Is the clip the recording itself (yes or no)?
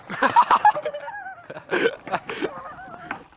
no